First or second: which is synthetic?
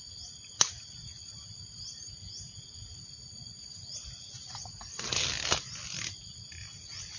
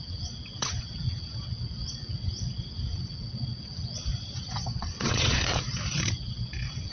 second